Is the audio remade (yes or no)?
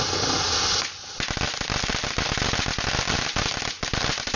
no